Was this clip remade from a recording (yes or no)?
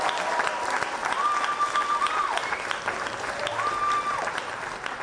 no